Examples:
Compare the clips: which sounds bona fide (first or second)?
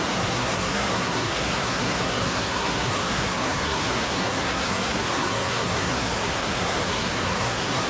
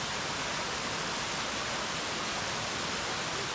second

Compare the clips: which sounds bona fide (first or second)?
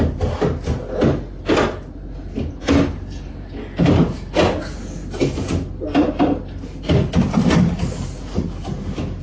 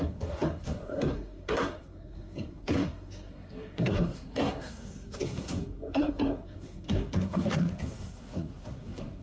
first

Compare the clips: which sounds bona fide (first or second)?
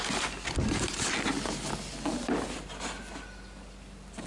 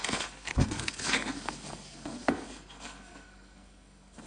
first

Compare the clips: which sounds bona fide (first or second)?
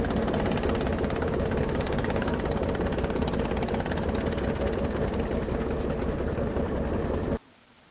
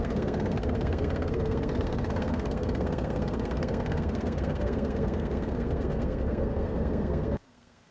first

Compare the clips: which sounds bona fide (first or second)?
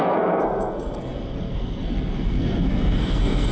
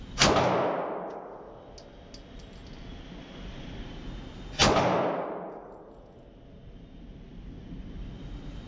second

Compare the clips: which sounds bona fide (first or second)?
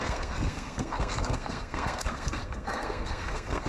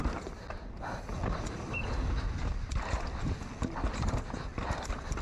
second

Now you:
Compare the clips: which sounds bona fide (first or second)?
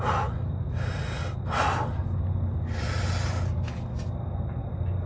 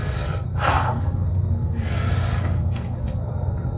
first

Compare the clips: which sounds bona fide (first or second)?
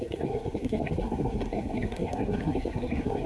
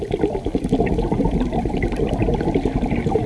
second